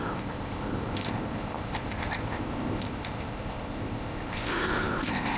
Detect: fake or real fake